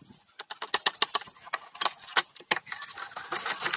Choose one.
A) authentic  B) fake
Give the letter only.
A